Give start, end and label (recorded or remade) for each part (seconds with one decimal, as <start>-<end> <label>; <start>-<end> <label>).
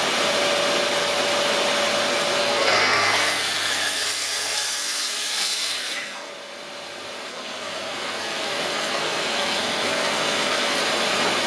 0.0-2.4 recorded; 2.4-6.3 remade; 6.3-7.3 recorded; 7.3-10.8 remade; 10.8-11.5 recorded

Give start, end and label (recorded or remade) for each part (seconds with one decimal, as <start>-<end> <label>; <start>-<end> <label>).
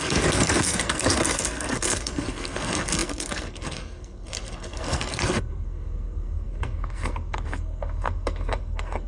0.0-9.1 remade